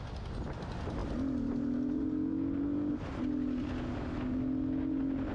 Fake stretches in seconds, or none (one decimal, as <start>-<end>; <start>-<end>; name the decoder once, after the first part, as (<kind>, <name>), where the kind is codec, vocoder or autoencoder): none